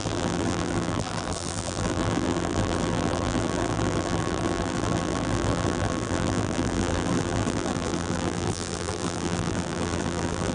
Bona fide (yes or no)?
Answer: no